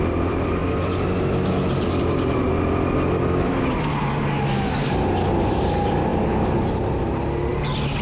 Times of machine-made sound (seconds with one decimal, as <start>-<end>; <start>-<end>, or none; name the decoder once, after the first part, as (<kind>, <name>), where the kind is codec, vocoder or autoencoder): 0.0-0.6 (vocoder, BigVGAN v2); 5.4-6.1; 7.5-8.0

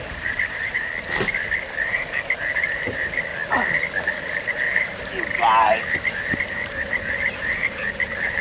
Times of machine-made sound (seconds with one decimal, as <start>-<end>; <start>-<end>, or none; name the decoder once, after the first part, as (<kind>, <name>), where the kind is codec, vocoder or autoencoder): 0.0-0.9 (vocoder, BigVGAN v2); 1.8-3.3; 4.3-5.1; 6.0-8.4